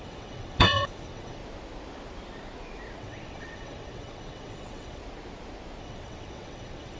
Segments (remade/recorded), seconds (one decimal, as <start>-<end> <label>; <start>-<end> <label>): 0.0-1.4 remade; 1.4-3.0 recorded; 3.0-5.0 remade; 5.0-5.8 recorded; 5.8-7.0 remade